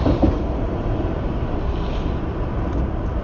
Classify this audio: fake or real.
real